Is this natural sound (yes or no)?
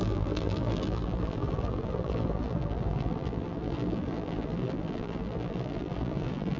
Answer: no